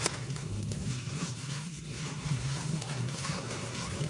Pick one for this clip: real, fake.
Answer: fake